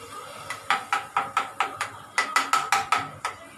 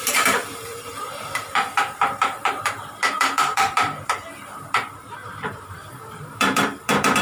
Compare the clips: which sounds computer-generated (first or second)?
second